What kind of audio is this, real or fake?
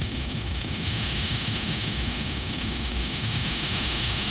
fake